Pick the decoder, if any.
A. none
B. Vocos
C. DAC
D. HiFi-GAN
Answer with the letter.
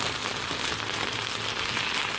A